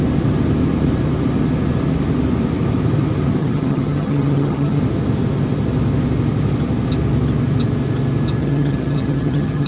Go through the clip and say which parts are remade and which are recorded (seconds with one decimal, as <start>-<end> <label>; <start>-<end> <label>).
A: 0.0-3.4 recorded; 3.4-4.8 remade; 4.8-8.4 recorded; 8.4-9.7 remade